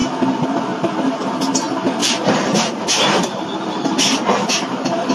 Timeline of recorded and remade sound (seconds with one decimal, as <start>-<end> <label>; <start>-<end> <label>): 0.0-2.0 recorded; 2.0-5.1 remade